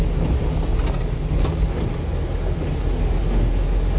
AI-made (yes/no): no